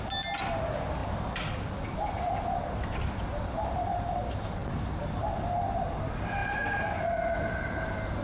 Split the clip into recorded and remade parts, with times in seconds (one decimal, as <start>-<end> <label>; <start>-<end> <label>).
0.0-8.2 recorded